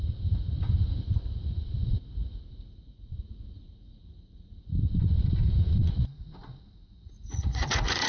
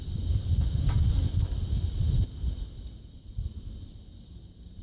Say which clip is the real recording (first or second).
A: second